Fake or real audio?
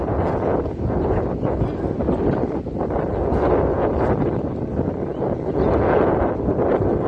real